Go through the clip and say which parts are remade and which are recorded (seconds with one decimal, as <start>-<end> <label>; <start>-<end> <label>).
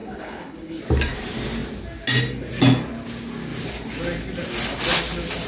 0.0-0.8 remade; 0.8-5.5 recorded